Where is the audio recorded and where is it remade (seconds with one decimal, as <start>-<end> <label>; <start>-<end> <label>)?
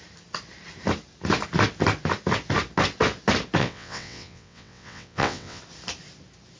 0.0-3.6 recorded; 3.6-5.6 remade; 5.6-6.6 recorded